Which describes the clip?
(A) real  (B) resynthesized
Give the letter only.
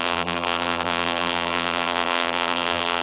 B